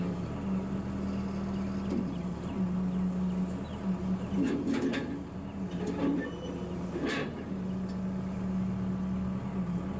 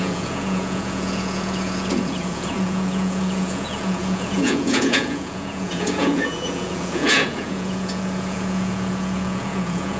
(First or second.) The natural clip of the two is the first